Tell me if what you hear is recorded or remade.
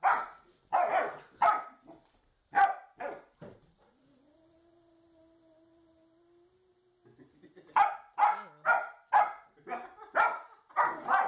recorded